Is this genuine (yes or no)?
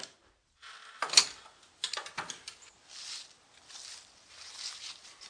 yes